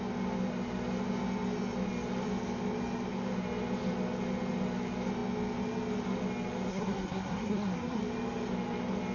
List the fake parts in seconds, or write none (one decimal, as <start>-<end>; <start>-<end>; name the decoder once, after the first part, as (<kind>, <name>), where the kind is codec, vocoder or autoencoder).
6.7-8.0 (codec, SNAC)